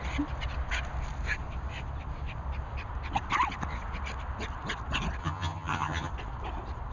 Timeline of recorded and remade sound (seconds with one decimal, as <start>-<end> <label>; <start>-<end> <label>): 0.0-5.2 recorded; 5.2-6.1 remade; 6.1-6.9 recorded